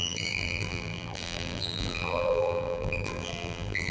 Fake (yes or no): yes